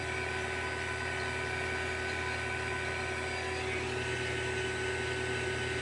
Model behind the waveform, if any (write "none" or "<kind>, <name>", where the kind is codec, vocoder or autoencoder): none